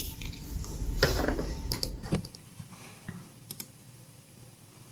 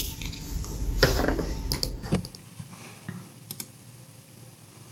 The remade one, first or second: first